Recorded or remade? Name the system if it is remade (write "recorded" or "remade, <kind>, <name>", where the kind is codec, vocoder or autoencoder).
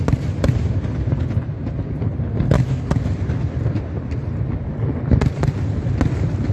recorded